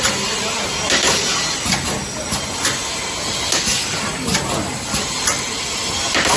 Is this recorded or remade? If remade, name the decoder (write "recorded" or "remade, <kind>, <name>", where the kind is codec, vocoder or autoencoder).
recorded